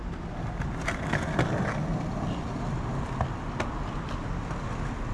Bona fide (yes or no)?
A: yes